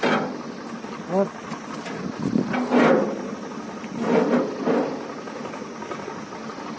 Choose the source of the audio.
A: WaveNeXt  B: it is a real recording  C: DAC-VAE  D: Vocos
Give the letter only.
B